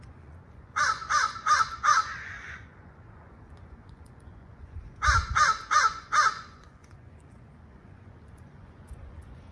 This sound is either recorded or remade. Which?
remade